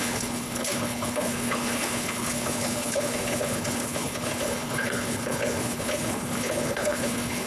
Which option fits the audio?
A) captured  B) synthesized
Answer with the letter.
B